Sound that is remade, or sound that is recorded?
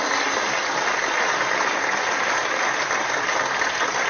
recorded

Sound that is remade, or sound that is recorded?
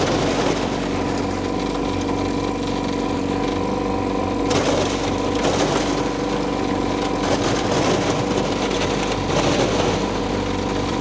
recorded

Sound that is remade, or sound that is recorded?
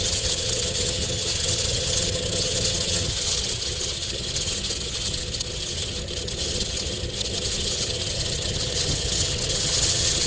remade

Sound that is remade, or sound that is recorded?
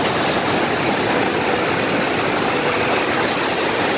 recorded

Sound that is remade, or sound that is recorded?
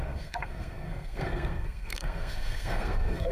remade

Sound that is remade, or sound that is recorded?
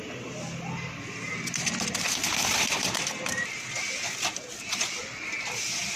recorded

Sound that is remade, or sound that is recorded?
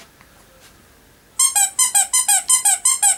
recorded